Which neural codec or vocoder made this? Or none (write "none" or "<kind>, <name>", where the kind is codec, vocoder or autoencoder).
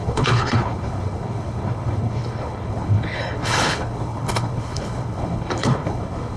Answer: codec, HILCodec